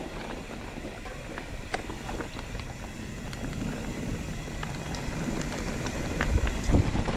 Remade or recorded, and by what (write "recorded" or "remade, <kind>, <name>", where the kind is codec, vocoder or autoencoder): recorded